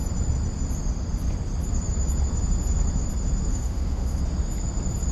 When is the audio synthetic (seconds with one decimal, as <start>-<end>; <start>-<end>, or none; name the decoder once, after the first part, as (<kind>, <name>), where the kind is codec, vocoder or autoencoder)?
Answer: 3.5-4.2 (autoencoder, DAC-VAE)